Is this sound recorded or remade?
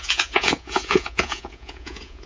remade